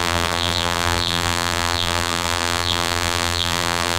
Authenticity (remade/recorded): remade